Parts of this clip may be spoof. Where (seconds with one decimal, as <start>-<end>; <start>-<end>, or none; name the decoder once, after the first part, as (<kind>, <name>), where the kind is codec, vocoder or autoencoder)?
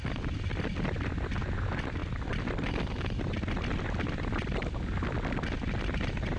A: none